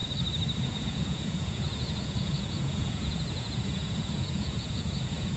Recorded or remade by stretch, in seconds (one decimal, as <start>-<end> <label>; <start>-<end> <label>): 0.0-0.6 recorded; 0.6-5.4 remade